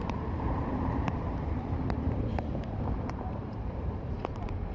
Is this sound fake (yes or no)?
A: yes